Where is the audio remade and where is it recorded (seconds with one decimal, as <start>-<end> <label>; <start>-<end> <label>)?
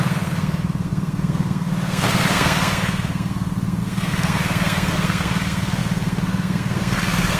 0.0-7.4 remade